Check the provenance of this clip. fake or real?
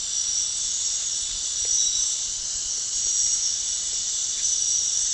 real